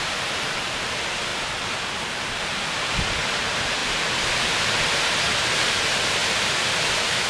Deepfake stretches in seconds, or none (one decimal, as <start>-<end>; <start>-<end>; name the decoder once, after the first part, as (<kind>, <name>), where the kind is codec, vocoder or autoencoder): 0.0-1.3 (vocoder, BigVGAN v2); 3.4-6.2